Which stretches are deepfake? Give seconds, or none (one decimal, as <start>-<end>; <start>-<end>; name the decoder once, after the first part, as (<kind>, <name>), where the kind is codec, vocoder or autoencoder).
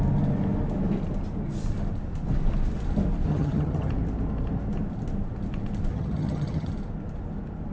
3.3-3.9 (vocoder, HiFi-GAN); 5.9-6.7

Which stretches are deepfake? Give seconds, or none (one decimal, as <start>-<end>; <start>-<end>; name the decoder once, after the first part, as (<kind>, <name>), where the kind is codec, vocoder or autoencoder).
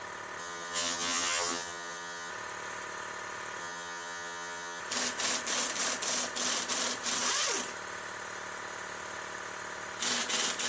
0.4-2.3 (vocoder, HiFi-GAN); 3.6-4.8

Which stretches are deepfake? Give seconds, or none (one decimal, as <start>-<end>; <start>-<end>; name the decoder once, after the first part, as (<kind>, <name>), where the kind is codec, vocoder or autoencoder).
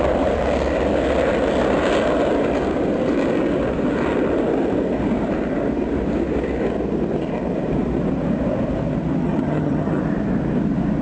9.2-10.0 (vocoder, HiFi-GAN)